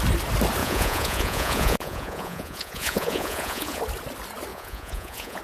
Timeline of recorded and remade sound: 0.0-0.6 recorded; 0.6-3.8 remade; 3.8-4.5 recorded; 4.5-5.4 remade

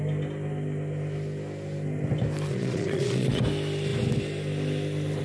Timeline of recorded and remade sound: 0.0-2.5 recorded; 2.5-3.4 remade; 3.4-5.2 recorded